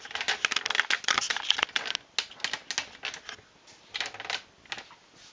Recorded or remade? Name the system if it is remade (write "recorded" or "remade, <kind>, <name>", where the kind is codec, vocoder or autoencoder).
recorded